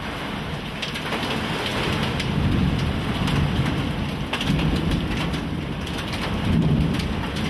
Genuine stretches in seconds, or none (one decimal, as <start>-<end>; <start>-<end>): none